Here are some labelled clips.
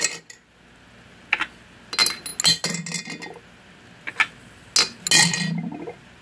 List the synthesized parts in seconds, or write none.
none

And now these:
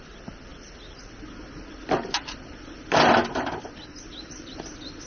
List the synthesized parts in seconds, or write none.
none

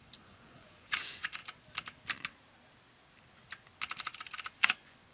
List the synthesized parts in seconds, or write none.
0.0-1.4; 4.5-5.1

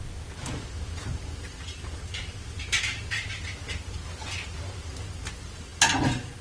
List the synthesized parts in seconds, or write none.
none

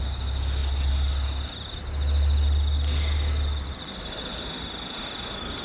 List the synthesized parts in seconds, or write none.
none

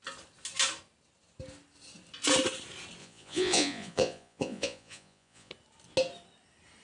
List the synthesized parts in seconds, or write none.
3.0-5.5

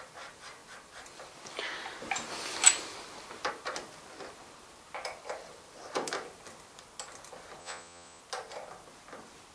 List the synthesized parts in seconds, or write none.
7.6-8.2

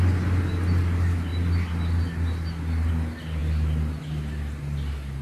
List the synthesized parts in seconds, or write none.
none